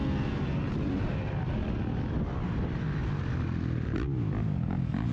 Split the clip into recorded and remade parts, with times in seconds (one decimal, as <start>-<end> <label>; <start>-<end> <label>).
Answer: 0.0-5.1 recorded

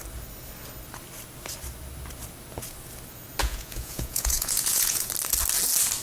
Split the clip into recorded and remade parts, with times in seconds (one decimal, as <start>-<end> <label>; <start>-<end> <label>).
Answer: 0.0-3.4 recorded; 3.4-5.1 remade; 5.1-6.0 recorded

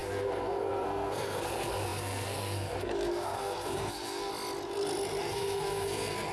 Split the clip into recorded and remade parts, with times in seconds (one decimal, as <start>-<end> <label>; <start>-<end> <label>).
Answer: 0.0-4.3 remade; 4.3-5.2 recorded; 5.2-6.3 remade

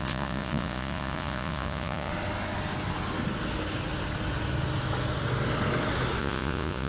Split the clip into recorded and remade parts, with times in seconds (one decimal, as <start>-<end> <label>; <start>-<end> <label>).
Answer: 0.0-2.1 remade; 2.1-6.2 recorded; 6.2-6.9 remade

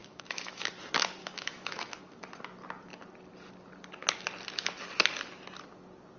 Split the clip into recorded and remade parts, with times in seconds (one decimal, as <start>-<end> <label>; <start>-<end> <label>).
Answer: 0.0-0.7 remade; 0.7-1.2 recorded; 1.2-2.2 remade; 2.2-6.2 recorded